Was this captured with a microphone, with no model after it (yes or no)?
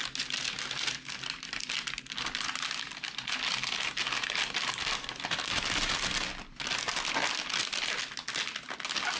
yes